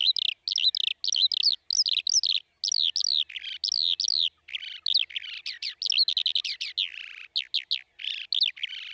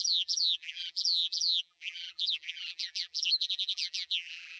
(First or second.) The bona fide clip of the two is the first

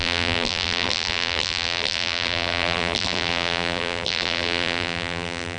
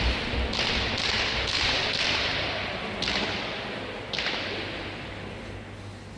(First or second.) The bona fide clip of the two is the second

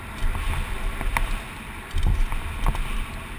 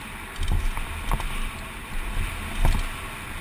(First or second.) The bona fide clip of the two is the second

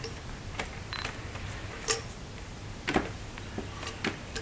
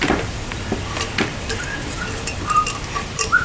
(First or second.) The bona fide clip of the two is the first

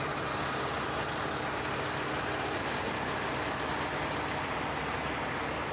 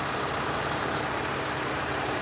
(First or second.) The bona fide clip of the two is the first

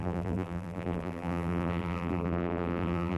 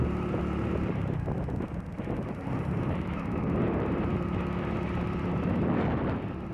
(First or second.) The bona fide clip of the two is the second